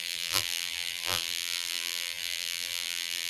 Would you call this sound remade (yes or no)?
yes